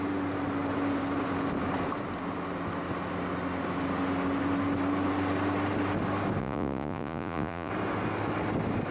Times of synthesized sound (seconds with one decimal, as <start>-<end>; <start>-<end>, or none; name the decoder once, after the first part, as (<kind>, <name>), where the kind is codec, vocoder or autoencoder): 6.4-7.7 (vocoder, Vocos)